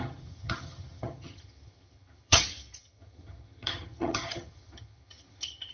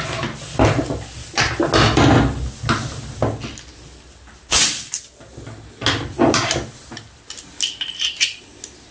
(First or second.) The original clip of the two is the second